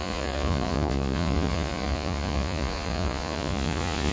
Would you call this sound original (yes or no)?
no